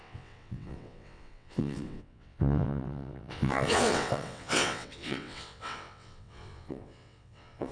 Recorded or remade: remade